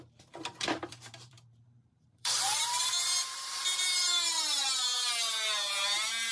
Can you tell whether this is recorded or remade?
remade